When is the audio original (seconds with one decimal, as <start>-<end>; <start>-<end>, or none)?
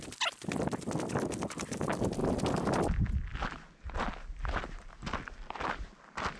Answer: 0.0-6.4